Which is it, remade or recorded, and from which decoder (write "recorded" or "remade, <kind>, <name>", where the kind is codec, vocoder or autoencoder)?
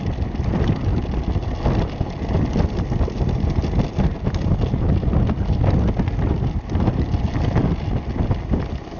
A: recorded